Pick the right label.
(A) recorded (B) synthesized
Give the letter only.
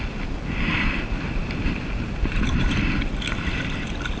A